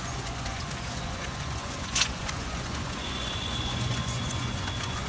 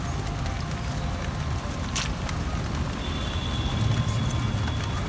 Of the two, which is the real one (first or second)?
second